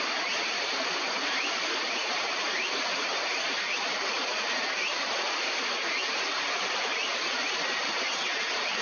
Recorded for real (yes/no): no